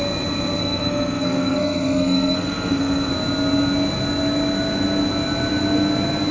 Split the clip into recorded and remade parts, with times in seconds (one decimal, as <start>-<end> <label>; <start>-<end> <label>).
0.0-0.6 recorded; 0.6-3.1 remade; 3.1-6.3 recorded